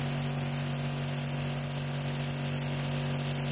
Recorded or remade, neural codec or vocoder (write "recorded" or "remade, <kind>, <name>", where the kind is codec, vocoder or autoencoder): recorded